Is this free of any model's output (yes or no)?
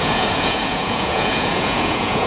no